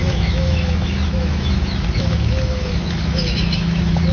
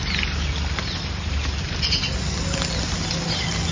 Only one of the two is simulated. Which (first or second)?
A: first